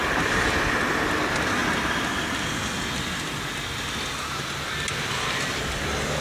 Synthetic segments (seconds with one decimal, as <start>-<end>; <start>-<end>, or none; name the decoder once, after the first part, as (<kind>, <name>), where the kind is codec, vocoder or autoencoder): none